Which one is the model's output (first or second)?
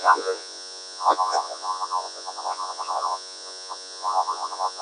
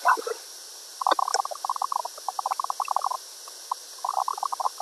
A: first